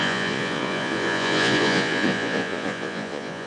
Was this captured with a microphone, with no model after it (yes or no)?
no